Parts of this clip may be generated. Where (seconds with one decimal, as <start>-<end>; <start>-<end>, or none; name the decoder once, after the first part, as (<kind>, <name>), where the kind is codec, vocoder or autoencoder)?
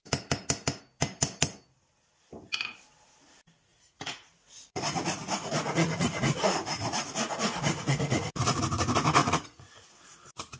3.7-8.6 (vocoder, Vocos); 9.2-10.6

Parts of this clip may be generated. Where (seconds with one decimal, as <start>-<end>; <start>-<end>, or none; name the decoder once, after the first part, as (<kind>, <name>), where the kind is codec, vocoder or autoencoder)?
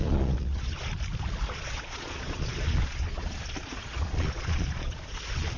0.0-0.9 (vocoder, Vocos); 1.5-5.6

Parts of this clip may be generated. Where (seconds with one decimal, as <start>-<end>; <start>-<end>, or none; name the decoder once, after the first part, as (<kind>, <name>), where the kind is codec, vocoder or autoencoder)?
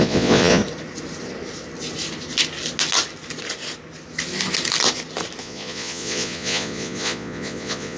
0.0-0.6 (vocoder, Vocos); 5.4-8.0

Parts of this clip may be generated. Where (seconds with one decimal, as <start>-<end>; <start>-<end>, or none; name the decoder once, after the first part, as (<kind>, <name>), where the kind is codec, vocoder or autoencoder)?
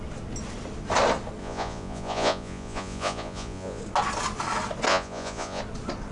1.4-3.8 (vocoder, Vocos); 4.9-5.6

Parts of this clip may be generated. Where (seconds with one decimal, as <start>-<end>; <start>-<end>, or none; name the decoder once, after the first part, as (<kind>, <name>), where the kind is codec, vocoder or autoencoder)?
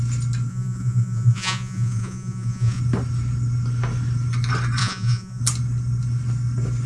0.5-2.8 (vocoder, Vocos); 4.8-5.4